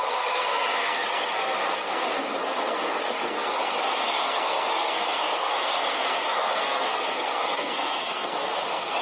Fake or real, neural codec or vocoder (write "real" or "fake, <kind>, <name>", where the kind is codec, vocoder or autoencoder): fake, codec, SNAC